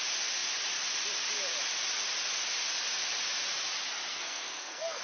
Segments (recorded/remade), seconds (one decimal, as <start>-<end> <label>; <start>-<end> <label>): 0.0-4.1 recorded; 4.1-5.0 remade